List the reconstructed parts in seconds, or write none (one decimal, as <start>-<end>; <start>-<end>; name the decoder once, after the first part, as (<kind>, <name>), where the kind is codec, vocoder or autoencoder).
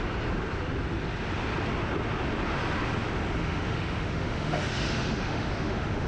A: 3.4-6.1 (autoencoder, DAC-VAE)